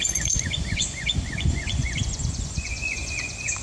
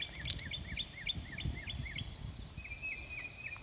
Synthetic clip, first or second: first